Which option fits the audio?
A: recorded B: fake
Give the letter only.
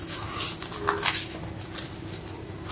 A